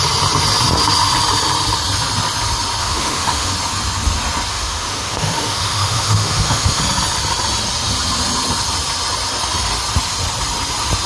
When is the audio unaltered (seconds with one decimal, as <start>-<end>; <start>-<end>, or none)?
0.0-2.8; 3.5-4.5; 6.8-11.1